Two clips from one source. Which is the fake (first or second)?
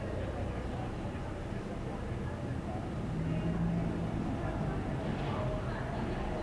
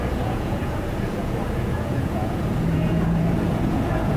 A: second